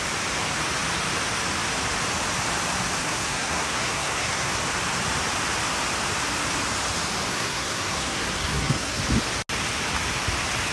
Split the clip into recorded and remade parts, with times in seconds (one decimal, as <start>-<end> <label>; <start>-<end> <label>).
0.0-3.0 recorded; 3.0-4.6 remade; 4.6-7.3 recorded; 7.3-9.0 remade; 9.0-10.7 recorded